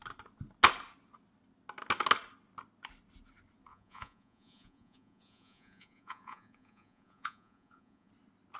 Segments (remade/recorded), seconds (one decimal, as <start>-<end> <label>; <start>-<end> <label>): 0.0-3.7 recorded; 3.7-8.1 remade; 8.1-8.6 recorded